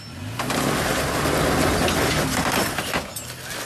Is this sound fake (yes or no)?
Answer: no